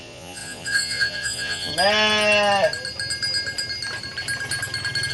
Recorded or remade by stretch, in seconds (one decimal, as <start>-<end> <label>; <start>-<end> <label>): 0.0-1.7 remade; 1.7-5.1 recorded